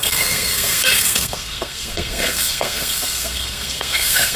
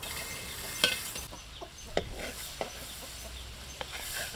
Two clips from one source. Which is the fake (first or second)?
first